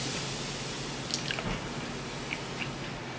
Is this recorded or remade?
recorded